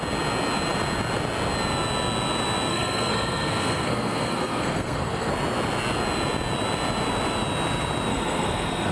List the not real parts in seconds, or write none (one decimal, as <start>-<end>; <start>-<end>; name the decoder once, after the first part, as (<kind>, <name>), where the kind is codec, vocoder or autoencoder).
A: 2.7-5.3 (codec, SNAC); 8.1-8.9